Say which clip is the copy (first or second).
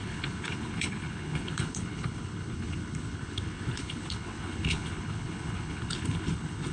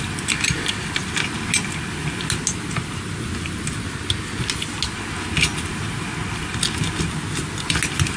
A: first